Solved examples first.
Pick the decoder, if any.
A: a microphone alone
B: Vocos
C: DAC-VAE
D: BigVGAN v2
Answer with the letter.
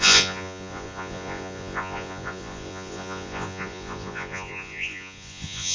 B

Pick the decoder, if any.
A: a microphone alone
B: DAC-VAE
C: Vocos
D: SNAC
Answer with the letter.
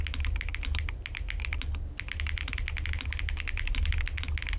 A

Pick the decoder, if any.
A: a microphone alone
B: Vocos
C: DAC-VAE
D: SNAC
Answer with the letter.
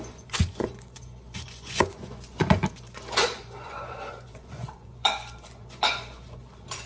B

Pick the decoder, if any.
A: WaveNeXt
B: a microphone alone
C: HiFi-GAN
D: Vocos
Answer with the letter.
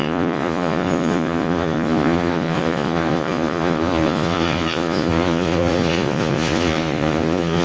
D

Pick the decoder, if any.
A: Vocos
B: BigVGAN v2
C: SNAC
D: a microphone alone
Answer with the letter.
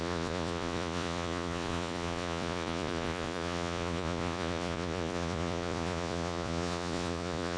A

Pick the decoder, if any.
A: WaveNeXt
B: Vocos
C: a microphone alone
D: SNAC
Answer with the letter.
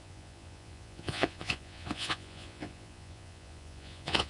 B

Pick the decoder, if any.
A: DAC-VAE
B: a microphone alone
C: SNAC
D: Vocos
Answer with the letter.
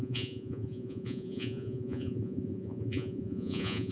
D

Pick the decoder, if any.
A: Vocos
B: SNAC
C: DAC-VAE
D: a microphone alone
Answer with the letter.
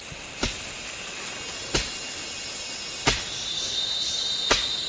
D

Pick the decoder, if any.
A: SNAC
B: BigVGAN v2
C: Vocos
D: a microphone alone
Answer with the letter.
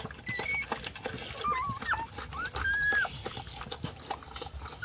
D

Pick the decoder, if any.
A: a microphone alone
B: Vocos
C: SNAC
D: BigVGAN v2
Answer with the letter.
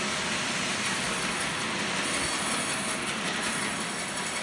A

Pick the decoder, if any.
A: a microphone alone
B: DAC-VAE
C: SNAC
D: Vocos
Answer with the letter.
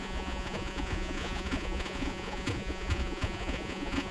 D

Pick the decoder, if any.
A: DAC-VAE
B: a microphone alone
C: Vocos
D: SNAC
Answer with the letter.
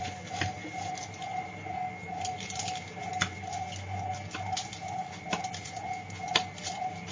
B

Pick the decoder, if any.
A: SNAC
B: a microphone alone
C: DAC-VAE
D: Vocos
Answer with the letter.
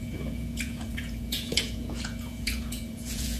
D